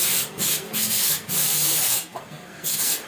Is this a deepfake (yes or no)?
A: yes